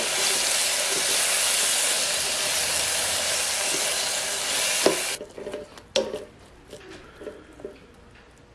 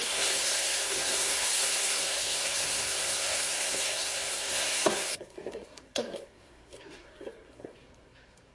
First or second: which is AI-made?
second